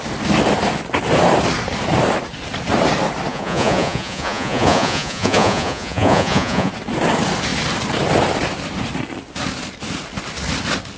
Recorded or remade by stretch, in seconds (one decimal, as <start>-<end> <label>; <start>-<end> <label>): 0.0-3.3 recorded; 3.3-6.7 remade; 6.7-11.0 recorded